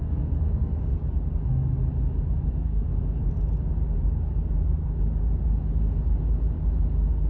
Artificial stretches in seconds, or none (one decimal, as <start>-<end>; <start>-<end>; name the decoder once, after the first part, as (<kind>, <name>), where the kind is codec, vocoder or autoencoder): 0.0-1.0 (codec, SNAC); 2.5-2.9

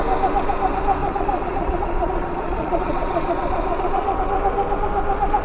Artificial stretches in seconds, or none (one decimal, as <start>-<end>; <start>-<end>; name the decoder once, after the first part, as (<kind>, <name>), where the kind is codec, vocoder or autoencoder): 1.0-4.2 (vocoder, Vocos)

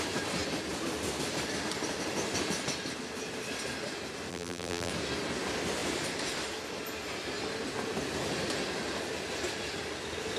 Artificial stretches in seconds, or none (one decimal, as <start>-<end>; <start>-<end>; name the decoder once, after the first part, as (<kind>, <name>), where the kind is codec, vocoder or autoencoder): 4.3-4.9 (vocoder, BigVGAN v2)